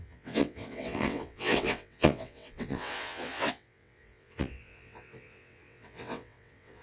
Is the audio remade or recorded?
remade